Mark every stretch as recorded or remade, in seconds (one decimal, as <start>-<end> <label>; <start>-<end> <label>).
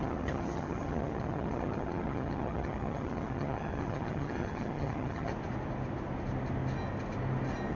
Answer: 0.0-5.3 remade; 5.3-7.7 recorded